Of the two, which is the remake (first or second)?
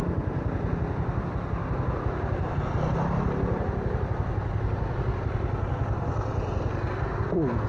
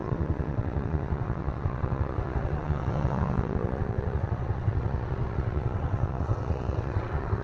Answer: second